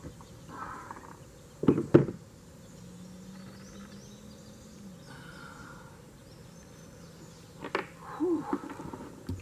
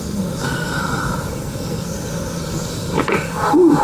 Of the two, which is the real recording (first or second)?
first